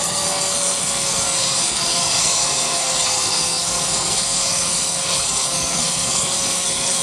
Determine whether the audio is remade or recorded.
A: remade